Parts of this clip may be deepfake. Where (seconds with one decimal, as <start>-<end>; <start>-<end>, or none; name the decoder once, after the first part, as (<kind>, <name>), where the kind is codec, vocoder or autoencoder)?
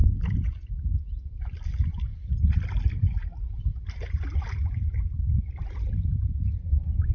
none